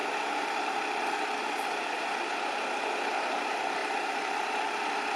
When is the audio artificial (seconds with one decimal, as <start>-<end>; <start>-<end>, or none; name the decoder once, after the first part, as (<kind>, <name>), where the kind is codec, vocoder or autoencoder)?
0.0-1.2 (vocoder, BigVGAN v2); 3.8-4.8